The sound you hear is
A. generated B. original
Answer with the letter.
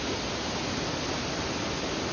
B